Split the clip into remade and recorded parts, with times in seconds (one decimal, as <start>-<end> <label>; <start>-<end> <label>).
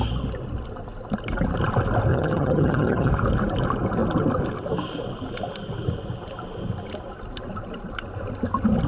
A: 0.0-2.1 recorded; 2.1-3.1 remade; 3.1-8.9 recorded